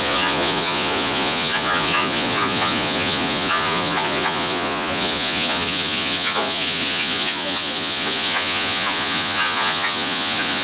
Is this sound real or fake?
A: fake